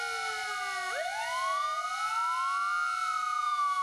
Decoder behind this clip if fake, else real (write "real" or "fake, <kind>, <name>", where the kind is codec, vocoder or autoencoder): real